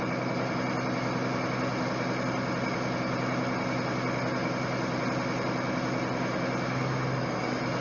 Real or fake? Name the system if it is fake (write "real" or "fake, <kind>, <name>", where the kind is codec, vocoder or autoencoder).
real